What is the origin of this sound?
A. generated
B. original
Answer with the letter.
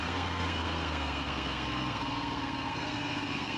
A